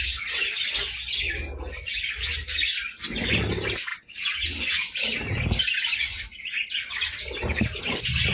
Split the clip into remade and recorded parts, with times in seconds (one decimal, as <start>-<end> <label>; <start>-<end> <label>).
0.0-8.3 recorded